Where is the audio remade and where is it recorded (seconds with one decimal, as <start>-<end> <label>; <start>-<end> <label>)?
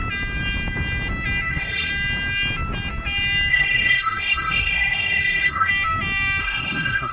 0.0-1.5 recorded; 1.5-1.9 remade; 1.9-3.5 recorded; 3.5-5.7 remade; 5.7-6.4 recorded; 6.4-7.1 remade